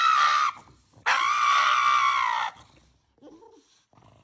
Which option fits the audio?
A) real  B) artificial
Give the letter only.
A